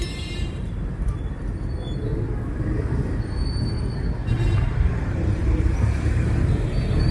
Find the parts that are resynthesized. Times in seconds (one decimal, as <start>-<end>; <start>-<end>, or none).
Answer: 0.0-2.1; 4.7-7.1